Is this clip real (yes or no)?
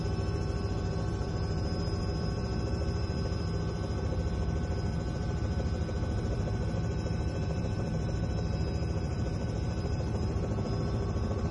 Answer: no